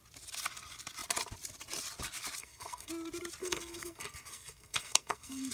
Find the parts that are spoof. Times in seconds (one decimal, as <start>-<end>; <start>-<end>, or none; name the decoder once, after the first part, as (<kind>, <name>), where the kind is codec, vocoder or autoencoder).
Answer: 2.4-2.9 (codec, SNAC); 3.4-5.5